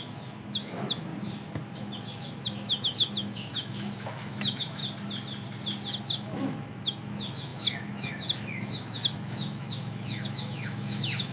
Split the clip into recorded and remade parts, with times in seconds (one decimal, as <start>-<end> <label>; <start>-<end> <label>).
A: 0.0-1.1 remade; 1.1-1.8 recorded; 1.8-4.8 remade; 4.8-6.0 recorded; 6.0-11.3 remade